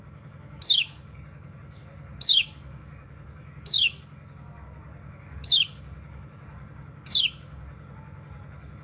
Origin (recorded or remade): remade